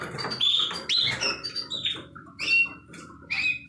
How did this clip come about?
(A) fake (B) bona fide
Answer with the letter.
B